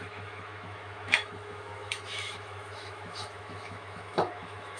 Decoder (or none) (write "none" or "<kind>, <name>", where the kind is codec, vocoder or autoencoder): autoencoder, DAC-VAE